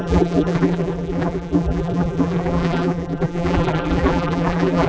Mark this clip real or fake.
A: fake